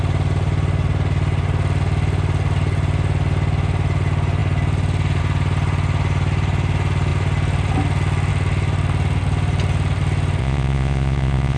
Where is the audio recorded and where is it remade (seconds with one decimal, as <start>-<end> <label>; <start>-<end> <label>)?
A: 0.0-10.4 recorded; 10.4-11.6 remade